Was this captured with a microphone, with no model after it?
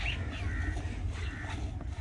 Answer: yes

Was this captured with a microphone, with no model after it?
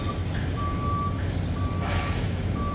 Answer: yes